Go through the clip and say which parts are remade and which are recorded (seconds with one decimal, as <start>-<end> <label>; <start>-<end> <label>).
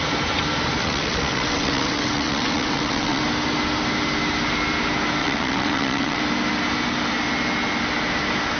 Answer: 0.0-0.8 recorded; 0.8-3.2 remade; 3.2-5.2 recorded; 5.2-6.2 remade; 6.2-8.6 recorded